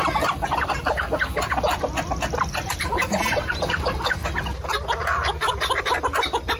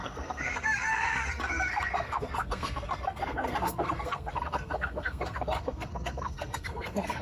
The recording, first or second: first